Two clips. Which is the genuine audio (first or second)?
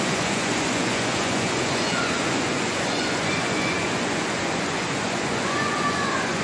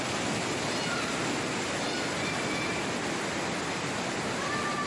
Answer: second